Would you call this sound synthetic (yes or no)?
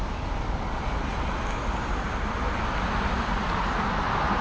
no